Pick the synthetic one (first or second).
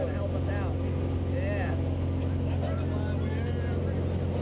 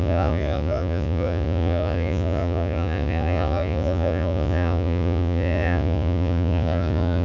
second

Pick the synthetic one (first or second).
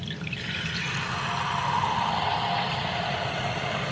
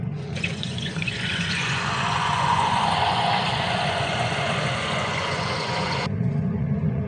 second